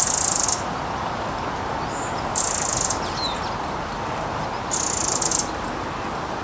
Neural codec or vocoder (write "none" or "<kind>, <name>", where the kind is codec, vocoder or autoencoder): none